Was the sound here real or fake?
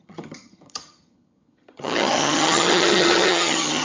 fake